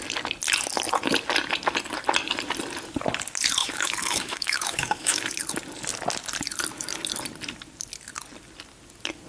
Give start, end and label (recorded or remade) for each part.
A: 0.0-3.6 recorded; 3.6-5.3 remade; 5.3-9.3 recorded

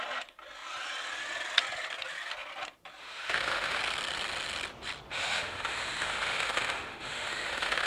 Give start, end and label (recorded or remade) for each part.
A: 0.0-3.0 recorded; 3.0-3.8 remade; 3.8-5.1 recorded; 5.1-7.9 remade

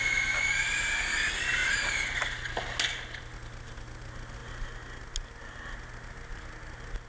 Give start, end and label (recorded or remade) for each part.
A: 0.0-7.1 recorded

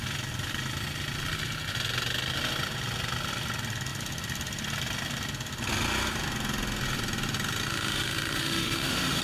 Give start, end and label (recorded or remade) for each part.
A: 0.0-7.7 recorded; 7.7-9.2 remade